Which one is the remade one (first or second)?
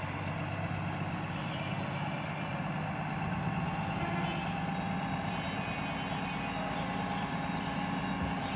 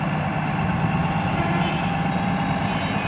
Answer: second